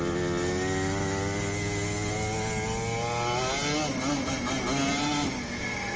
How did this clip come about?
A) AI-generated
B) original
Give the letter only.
B